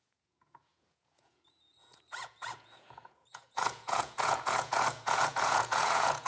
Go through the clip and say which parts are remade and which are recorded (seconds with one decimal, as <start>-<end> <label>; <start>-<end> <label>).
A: 0.0-6.3 remade